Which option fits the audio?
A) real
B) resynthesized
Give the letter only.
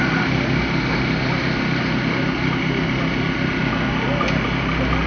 A